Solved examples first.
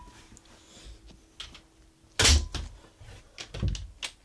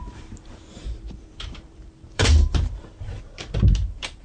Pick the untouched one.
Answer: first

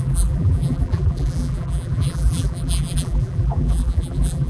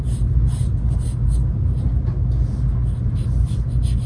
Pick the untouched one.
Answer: second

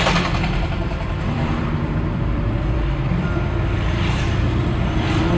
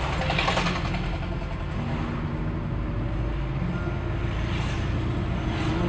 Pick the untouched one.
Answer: second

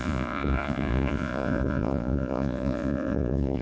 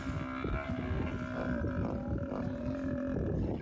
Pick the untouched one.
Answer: second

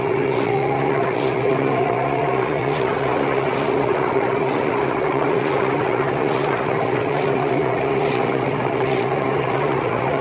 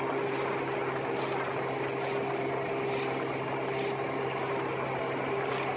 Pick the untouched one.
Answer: second